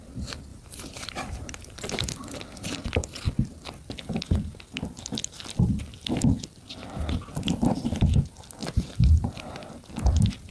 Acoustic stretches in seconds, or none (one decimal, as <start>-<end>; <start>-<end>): 0.0-0.5; 2.0-8.6; 9.9-10.5